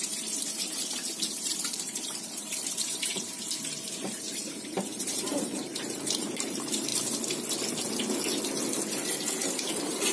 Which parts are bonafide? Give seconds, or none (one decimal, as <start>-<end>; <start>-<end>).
6.9-9.7

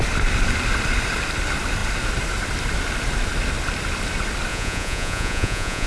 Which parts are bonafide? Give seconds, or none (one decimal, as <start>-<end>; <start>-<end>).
0.0-4.5

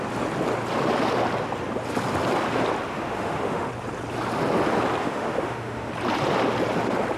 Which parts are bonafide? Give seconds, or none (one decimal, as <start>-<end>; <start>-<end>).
0.0-2.9; 3.7-5.0; 5.9-7.2

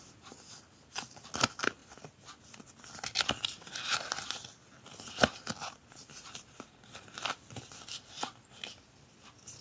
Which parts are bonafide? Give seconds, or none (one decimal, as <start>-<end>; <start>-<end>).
0.0-9.6

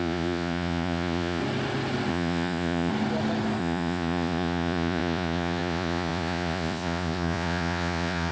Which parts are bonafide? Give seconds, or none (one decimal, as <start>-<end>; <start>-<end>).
1.4-2.1; 2.9-3.6

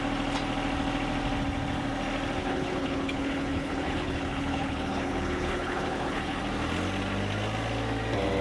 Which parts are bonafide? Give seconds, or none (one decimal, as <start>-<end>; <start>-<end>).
0.0-2.4; 6.4-8.4

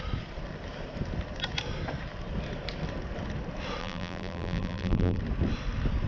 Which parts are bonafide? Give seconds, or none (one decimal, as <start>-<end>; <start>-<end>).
0.0-3.8; 5.2-6.1